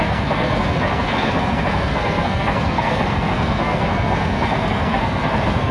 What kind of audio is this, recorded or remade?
remade